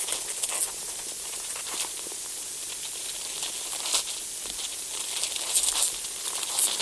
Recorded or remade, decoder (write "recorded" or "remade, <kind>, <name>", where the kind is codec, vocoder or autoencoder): recorded